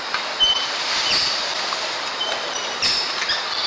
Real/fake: real